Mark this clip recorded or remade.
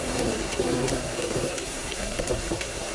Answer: remade